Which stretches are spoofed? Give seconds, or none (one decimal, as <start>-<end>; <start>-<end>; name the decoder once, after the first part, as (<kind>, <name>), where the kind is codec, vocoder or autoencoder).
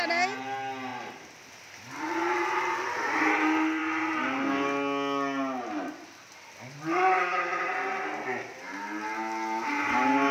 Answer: none